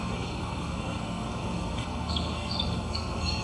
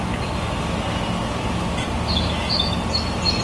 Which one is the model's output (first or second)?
first